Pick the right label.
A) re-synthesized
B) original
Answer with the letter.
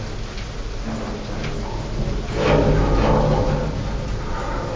B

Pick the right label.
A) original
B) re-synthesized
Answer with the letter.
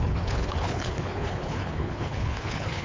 B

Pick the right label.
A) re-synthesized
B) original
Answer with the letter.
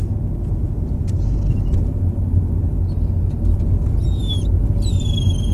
B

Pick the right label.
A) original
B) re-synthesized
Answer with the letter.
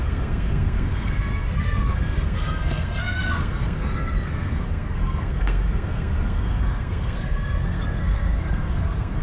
B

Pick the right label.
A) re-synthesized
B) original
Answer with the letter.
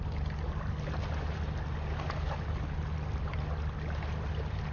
B